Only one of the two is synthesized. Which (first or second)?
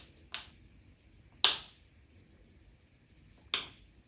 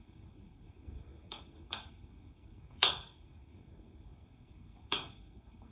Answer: second